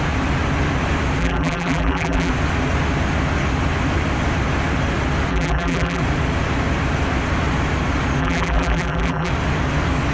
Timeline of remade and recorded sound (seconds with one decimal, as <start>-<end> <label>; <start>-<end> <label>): 0.0-1.2 recorded; 1.2-2.3 remade; 2.3-5.3 recorded; 5.3-6.0 remade; 6.0-8.2 recorded; 8.2-9.3 remade; 9.3-10.1 recorded